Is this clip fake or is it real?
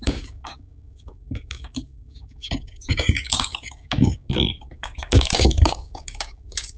fake